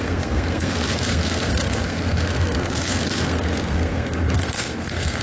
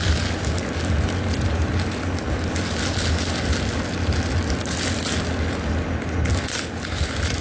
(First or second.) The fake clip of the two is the first